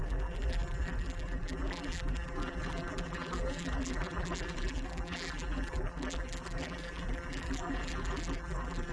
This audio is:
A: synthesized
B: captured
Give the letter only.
A